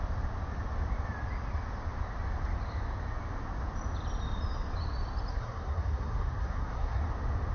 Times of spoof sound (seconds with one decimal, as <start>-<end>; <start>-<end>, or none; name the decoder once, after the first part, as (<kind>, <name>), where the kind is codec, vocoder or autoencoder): 5.3-7.0 (codec, SNAC)